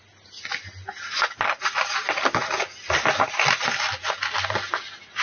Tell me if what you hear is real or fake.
real